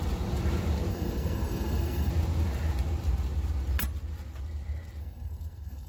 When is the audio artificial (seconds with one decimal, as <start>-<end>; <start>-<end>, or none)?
0.9-2.1; 5.0-5.9